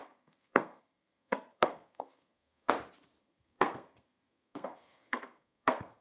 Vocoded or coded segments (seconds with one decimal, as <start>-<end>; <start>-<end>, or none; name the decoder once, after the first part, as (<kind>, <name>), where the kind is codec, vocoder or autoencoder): 0.0-2.7 (codec, SNAC); 3.2-6.0